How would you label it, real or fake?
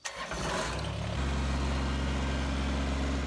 real